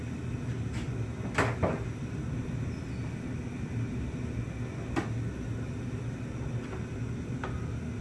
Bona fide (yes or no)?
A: yes